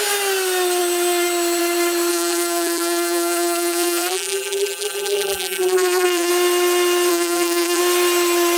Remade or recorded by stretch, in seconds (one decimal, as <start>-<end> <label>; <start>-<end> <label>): 0.0-2.1 recorded; 2.1-6.3 remade; 6.3-7.1 recorded; 7.1-7.8 remade; 7.8-8.6 recorded